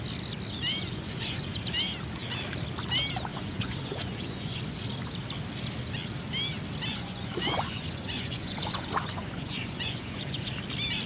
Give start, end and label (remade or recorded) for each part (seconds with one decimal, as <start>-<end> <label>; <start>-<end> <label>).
0.0-0.8 recorded; 0.8-1.6 remade; 1.6-3.3 recorded; 3.3-4.6 remade; 4.6-6.9 recorded; 6.9-10.5 remade; 10.5-11.1 recorded